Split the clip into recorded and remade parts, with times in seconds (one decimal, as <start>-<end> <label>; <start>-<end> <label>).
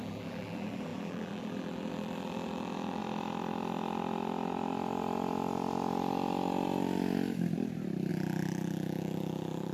0.0-3.0 remade; 3.0-8.1 recorded; 8.1-9.7 remade